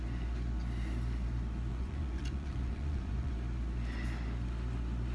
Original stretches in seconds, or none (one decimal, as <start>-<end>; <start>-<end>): 0.0-1.7; 3.3-5.1